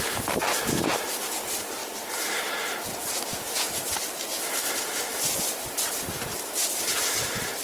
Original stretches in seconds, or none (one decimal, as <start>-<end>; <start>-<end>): 0.0-1.8; 3.2-5.1; 6.3-7.6